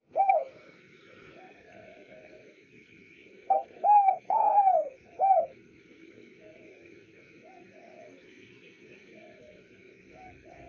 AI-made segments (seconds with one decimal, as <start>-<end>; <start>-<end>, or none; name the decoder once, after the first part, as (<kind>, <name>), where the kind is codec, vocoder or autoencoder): 0.0-10.7 (codec, SNAC)